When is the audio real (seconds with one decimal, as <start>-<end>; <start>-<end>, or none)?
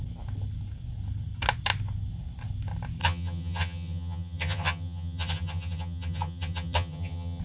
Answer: 0.0-3.0